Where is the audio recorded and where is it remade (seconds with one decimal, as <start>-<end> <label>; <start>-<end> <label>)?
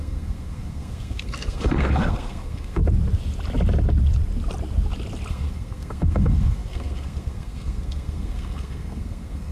0.0-2.8 remade; 2.8-5.3 recorded; 5.3-9.5 remade